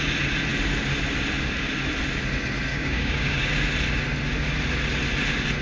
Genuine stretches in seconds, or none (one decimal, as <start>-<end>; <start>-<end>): 0.0-2.7; 3.5-5.6